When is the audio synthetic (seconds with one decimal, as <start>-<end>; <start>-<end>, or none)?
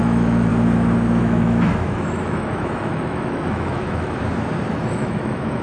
0.0-0.5; 1.2-4.2; 4.7-5.6